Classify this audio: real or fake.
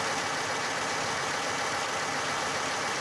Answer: real